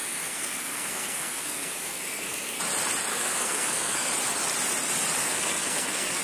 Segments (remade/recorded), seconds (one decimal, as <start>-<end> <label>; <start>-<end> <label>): 0.0-2.6 remade; 2.6-3.1 recorded; 3.1-4.1 remade; 4.1-5.2 recorded; 5.2-6.2 remade